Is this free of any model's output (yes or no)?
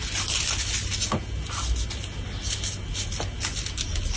yes